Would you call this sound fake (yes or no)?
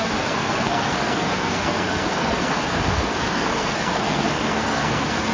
yes